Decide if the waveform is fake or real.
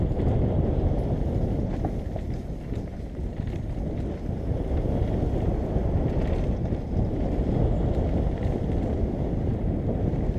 real